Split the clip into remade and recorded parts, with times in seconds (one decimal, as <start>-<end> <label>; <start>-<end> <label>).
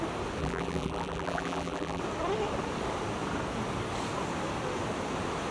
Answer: 0.0-0.4 recorded; 0.4-2.0 remade; 2.0-5.5 recorded